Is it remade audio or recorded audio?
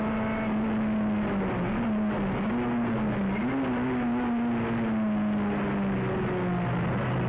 recorded